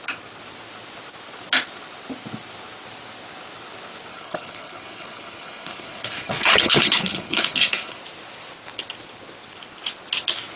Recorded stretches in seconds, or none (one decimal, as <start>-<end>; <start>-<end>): 0.0-4.1; 8.0-10.6